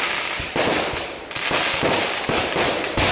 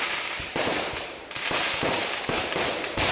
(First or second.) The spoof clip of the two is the second